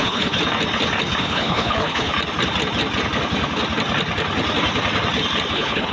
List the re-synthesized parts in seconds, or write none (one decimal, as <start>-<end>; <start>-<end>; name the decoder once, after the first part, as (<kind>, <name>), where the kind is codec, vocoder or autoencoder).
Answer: 0.0-0.4 (codec, HILCodec); 1.2-2.1; 5.5-5.9